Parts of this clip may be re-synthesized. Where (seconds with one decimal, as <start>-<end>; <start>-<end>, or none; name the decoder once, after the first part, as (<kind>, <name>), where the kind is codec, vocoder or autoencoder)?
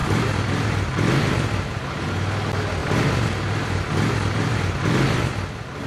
0.0-2.1 (vocoder, BigVGAN v2); 2.8-5.3